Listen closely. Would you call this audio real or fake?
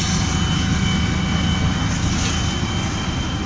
real